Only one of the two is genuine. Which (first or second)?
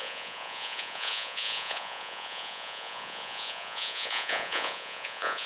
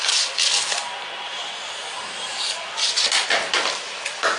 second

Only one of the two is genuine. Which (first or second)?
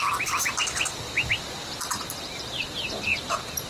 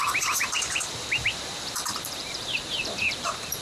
first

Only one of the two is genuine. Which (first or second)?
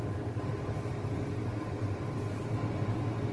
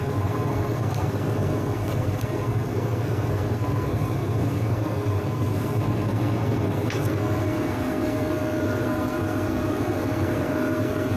first